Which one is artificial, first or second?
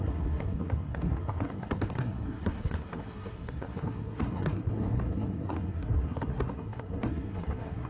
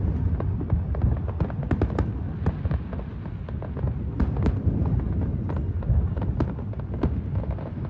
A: first